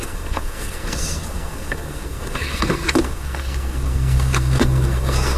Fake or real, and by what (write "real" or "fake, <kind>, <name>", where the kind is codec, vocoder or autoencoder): fake, codec, SNAC